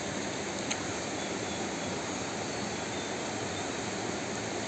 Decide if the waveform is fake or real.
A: real